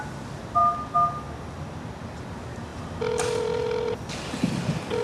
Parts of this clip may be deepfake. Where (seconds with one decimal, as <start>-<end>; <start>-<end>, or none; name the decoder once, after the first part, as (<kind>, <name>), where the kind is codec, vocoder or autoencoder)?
none